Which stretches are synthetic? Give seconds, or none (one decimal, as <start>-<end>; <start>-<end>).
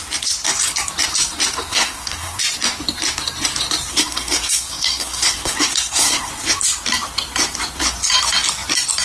1.7-2.4; 3.9-6.3